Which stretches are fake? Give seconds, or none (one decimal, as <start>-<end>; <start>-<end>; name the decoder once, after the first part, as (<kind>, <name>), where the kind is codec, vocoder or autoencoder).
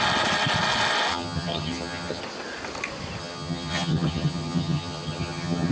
1.1-2.2 (vocoder, HiFi-GAN); 3.2-5.7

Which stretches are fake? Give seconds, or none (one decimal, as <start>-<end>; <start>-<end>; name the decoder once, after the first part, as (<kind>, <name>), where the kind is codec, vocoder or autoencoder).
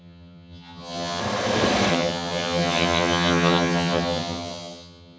0.0-1.2 (vocoder, HiFi-GAN); 1.9-5.2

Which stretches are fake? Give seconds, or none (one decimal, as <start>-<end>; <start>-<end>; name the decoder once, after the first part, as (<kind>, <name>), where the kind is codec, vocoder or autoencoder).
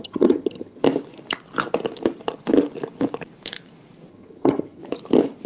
0.0-0.8 (vocoder, HiFi-GAN); 4.1-4.8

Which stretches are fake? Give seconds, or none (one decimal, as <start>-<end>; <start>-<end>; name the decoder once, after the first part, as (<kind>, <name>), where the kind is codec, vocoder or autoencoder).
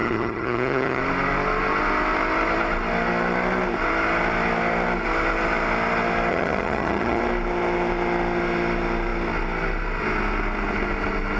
0.0-1.0 (vocoder, HiFi-GAN); 6.3-7.2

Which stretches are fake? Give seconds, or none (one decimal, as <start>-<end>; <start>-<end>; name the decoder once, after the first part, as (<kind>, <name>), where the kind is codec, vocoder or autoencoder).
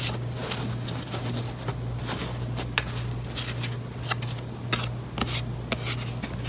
none